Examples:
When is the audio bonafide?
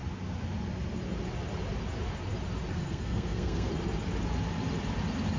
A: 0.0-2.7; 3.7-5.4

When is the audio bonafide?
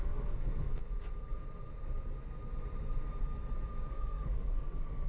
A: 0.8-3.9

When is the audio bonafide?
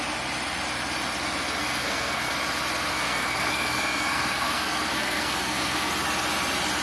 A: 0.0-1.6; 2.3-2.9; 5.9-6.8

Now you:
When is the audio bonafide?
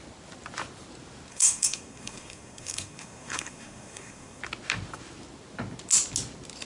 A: 0.0-1.3; 4.4-6.6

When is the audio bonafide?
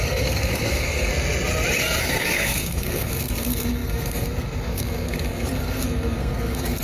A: 1.1-2.0